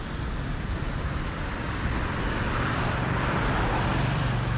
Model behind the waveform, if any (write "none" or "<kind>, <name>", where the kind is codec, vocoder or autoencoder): vocoder, BigVGAN v2